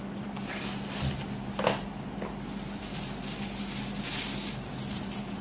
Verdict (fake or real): real